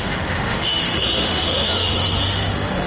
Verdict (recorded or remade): remade